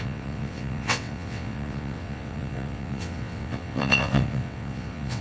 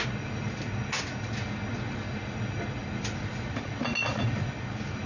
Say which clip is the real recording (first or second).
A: second